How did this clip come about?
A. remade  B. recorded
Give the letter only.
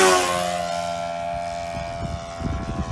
B